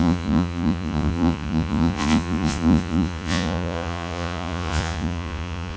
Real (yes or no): no